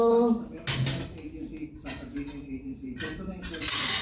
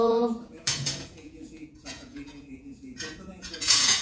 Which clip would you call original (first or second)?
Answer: first